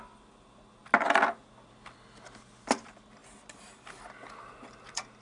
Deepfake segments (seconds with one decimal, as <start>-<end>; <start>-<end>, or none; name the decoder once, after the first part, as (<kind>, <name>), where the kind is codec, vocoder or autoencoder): none